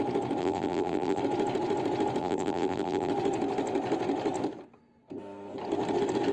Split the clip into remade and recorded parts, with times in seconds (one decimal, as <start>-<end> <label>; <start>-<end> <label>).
0.0-0.4 recorded; 0.4-1.2 remade; 1.2-2.2 recorded; 2.2-3.1 remade; 3.1-6.3 recorded